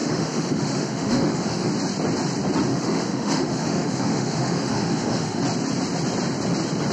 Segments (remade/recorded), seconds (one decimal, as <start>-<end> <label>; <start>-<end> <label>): 0.0-1.7 remade; 1.7-2.7 recorded; 2.7-5.4 remade; 5.4-6.9 recorded